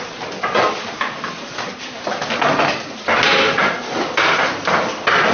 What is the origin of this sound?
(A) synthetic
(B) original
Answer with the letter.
B